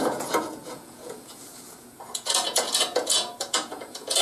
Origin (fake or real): fake